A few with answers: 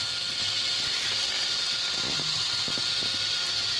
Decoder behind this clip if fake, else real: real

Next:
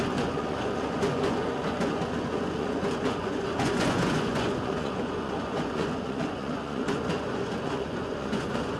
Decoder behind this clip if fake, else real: fake, vocoder, Vocos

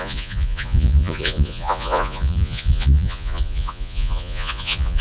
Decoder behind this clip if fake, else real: fake, vocoder, Vocos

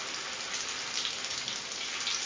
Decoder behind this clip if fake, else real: real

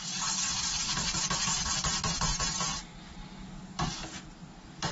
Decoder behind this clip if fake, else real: real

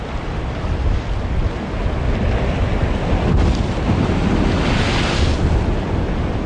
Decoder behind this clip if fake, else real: real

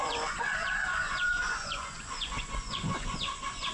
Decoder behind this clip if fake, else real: fake, vocoder, Vocos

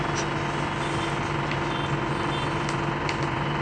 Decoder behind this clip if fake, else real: real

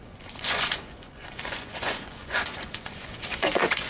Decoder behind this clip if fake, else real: fake, vocoder, Vocos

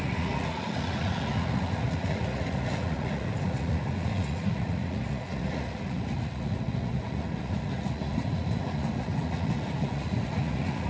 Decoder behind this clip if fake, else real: fake, vocoder, Vocos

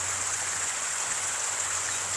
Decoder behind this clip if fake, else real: fake, vocoder, Vocos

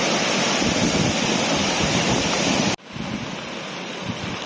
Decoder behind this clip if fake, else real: real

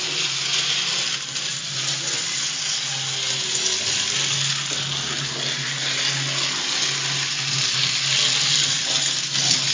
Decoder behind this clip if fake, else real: real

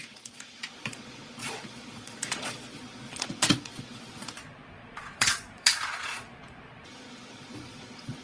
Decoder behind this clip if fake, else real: fake, vocoder, Vocos